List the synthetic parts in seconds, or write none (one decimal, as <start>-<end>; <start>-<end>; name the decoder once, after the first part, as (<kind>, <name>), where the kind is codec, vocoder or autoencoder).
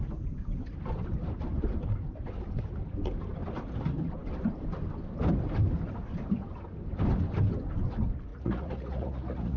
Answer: 8.3-9.6 (vocoder, Vocos)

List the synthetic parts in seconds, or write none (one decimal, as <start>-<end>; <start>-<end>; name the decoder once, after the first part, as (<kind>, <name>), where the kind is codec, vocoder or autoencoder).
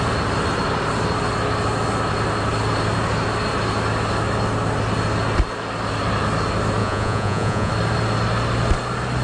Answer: 6.8-7.7 (vocoder, Vocos)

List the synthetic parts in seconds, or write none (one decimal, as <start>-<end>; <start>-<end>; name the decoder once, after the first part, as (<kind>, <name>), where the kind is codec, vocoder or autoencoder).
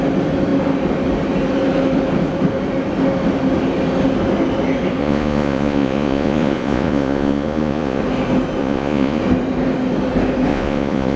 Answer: 5.0-8.0 (vocoder, Vocos); 8.6-9.2; 10.5-11.2